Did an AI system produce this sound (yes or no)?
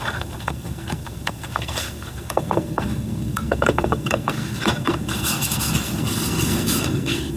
yes